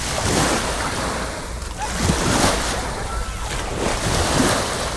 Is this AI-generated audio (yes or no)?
no